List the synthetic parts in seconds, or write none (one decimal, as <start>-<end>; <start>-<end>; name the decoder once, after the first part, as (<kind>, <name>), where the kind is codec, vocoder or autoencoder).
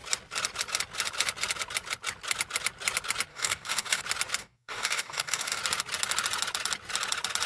3.3-4.0 (codec, DAC); 4.4-5.6